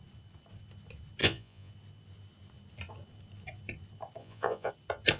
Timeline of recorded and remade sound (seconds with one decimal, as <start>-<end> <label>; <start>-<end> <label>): 0.0-1.2 recorded; 1.2-1.7 remade; 1.7-4.2 recorded; 4.2-4.7 remade; 4.7-5.2 recorded